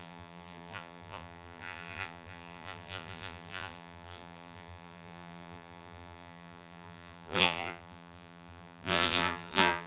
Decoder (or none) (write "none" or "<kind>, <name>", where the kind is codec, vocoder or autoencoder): vocoder, BigVGAN v2